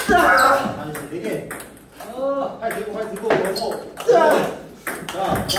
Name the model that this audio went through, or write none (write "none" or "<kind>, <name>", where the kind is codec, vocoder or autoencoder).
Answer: none